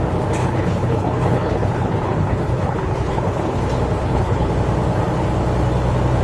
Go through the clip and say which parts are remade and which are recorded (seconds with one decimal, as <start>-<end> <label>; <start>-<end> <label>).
0.0-0.4 recorded; 0.4-3.6 remade; 3.6-4.0 recorded; 4.0-4.5 remade; 4.5-6.2 recorded